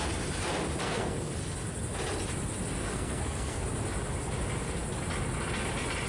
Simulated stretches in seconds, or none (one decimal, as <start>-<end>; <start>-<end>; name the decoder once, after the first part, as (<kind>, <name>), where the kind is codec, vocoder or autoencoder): 0.8-1.3 (codec, SNAC); 2.8-3.6